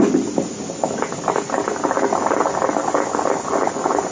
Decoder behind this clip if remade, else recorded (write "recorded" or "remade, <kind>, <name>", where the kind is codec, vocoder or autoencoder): recorded